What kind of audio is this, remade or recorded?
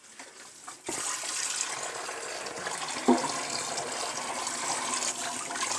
recorded